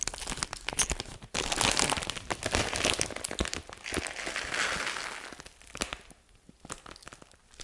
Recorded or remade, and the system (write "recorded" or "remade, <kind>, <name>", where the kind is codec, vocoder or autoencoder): recorded